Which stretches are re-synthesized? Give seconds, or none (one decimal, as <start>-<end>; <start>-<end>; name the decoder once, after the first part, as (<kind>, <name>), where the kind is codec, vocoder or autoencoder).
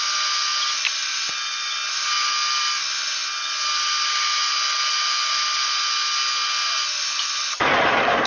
none